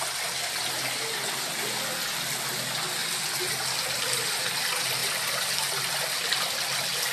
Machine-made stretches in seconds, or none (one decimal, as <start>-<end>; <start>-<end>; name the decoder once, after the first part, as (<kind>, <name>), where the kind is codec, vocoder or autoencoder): none